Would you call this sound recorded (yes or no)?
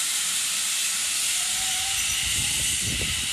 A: yes